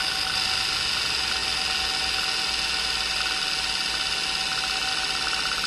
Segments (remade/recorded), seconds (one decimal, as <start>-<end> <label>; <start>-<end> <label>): 0.0-5.7 recorded